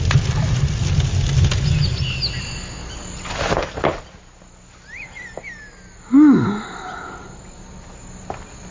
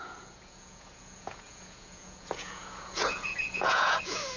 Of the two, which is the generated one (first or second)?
second